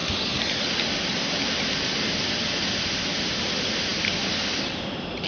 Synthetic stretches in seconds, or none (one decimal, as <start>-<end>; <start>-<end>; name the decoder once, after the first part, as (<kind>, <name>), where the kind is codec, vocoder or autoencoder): none